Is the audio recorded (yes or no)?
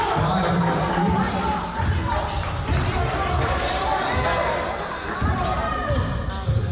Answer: yes